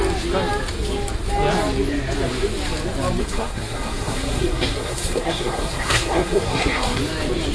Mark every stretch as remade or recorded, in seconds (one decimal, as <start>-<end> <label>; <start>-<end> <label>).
0.0-3.2 recorded; 3.2-7.0 remade; 7.0-7.5 recorded